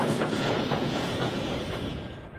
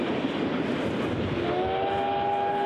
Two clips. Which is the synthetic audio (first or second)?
first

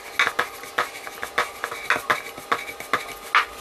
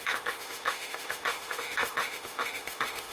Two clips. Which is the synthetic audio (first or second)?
second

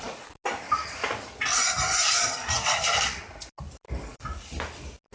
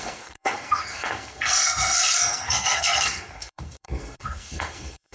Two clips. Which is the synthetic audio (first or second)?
second